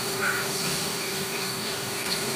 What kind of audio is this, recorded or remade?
remade